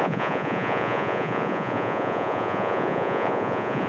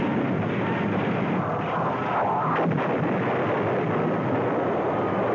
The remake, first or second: first